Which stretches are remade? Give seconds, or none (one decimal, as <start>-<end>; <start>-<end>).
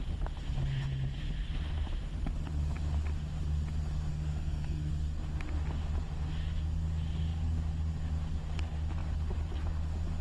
4.1-4.9